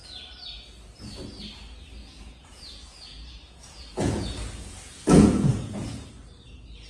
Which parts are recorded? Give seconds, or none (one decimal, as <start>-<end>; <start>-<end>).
0.0-2.0; 6.1-6.9